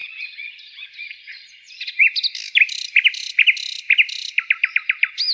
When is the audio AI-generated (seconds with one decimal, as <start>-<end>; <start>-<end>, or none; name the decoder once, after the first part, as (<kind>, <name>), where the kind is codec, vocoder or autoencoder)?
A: 0.0-2.0 (vocoder, Vocos)